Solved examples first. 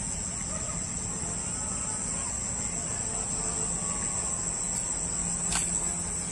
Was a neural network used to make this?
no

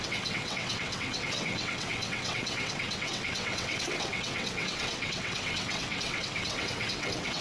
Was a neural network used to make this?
yes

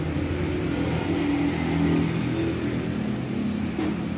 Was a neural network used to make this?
no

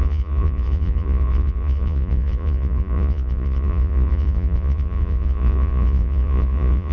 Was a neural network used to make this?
yes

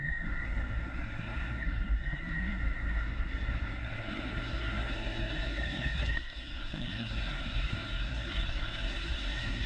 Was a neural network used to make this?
yes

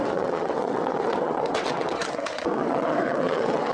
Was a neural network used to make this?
yes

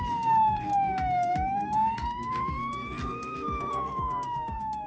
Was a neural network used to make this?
yes